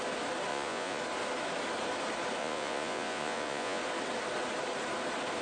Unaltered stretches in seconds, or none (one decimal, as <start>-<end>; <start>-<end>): 0.0-0.5; 1.0-2.4; 3.8-5.4